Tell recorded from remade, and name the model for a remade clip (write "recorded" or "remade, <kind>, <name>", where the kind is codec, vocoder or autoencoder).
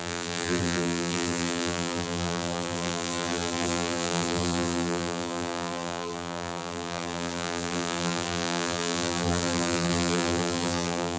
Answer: remade, vocoder, BigVGAN v2